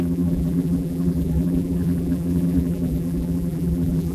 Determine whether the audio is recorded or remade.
remade